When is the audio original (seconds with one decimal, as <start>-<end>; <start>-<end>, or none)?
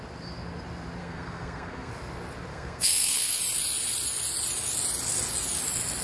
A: 0.0-1.0; 1.9-2.5; 3.4-6.0